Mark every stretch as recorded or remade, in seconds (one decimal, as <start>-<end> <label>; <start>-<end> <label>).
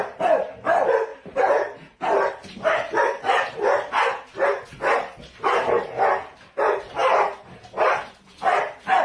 0.0-9.0 recorded